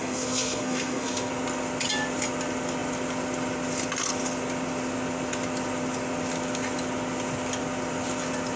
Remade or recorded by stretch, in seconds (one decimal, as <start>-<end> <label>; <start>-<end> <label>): 0.0-1.3 remade; 1.3-8.6 recorded